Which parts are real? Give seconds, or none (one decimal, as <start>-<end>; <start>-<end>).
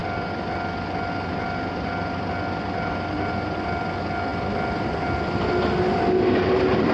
0.0-6.9